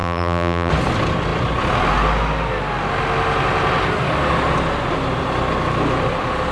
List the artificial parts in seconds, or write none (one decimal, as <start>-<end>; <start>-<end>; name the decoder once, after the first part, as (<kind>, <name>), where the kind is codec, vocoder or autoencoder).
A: 0.0-0.7 (vocoder, BigVGAN v2)